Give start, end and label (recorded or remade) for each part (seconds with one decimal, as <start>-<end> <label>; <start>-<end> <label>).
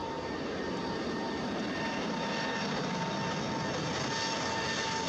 0.0-3.1 remade; 3.1-5.1 recorded